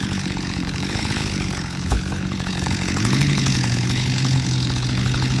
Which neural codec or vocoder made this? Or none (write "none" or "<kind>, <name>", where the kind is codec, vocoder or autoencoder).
codec, HILCodec